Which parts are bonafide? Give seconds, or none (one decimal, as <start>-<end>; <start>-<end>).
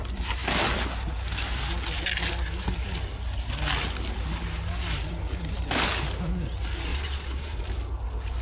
0.0-6.9; 7.6-8.4